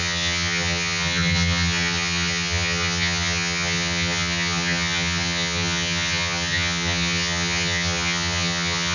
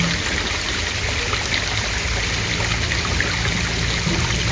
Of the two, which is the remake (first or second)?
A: first